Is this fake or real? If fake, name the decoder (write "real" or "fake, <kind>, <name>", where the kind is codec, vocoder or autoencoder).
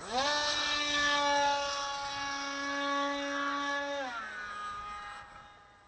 real